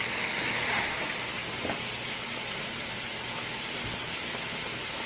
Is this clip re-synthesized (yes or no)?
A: no